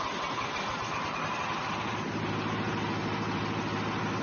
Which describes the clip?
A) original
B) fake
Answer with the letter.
A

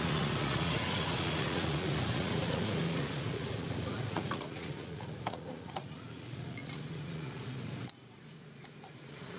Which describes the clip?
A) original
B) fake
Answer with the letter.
B